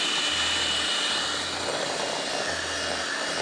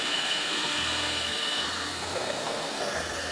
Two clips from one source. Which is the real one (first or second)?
first